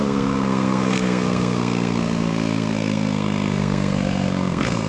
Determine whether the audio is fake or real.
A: fake